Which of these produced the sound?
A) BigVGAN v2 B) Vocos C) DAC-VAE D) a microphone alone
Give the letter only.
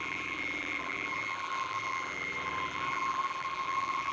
A